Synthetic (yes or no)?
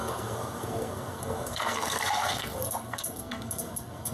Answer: yes